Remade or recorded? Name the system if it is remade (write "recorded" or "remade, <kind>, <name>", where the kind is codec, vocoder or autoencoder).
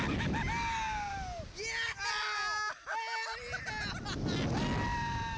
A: recorded